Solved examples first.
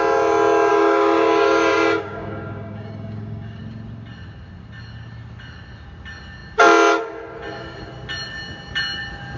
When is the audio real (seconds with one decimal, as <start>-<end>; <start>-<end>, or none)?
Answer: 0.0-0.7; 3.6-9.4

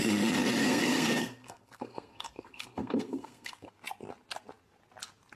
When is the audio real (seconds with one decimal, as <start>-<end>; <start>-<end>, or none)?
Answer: 0.0-0.6; 3.7-5.4

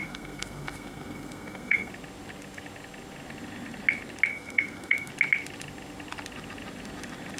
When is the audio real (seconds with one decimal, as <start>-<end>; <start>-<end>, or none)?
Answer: 1.9-4.3; 5.1-7.4